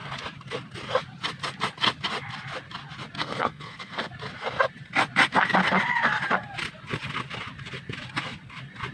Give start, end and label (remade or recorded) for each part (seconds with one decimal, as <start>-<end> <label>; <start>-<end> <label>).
0.0-3.2 recorded; 3.2-4.1 remade; 4.1-8.9 recorded